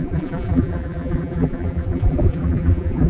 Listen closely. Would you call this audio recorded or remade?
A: remade